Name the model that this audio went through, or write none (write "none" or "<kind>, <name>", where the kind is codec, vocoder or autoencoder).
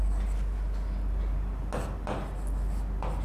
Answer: none